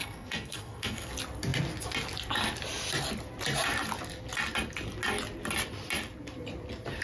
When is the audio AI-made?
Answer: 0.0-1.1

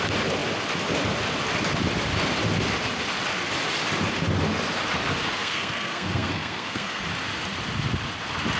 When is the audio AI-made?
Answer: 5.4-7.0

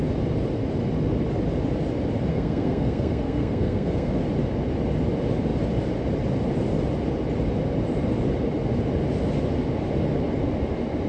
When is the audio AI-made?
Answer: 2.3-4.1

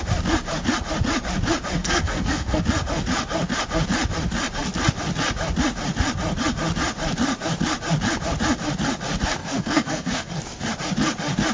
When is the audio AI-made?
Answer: 1.8-2.6; 9.4-10.3

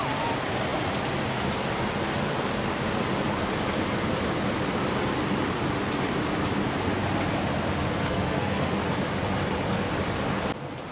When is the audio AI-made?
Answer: 8.0-8.8

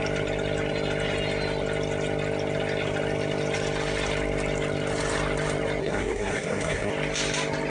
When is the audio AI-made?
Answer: 5.8-6.9